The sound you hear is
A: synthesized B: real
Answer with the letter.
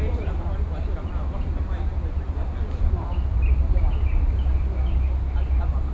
B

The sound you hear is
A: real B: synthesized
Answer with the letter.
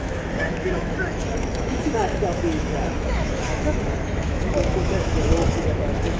B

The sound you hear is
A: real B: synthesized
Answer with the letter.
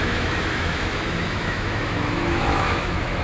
B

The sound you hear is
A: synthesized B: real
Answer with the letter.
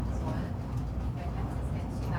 B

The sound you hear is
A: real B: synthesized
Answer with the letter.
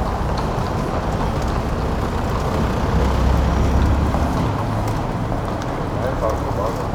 A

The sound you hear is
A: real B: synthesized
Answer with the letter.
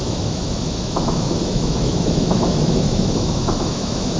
B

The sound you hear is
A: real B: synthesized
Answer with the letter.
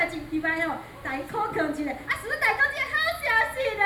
A